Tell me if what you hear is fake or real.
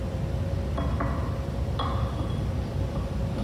real